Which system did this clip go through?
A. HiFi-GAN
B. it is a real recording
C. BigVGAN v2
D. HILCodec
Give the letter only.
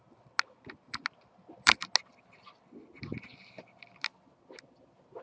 B